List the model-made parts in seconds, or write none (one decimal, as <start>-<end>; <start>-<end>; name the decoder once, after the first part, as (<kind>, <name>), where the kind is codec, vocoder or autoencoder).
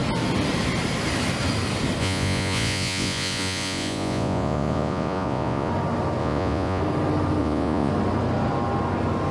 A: 2.0-5.7 (vocoder, Vocos); 6.2-6.8; 7.4-7.9